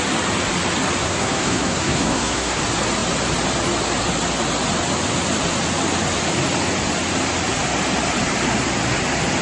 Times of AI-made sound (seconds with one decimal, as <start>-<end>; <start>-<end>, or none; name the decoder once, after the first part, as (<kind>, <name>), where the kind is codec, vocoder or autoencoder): 1.0-2.6 (codec, SNAC)